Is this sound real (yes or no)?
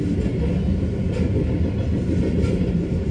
yes